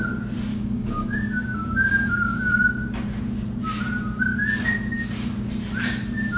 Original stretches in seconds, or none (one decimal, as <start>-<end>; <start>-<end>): 0.0-0.5; 2.6-6.4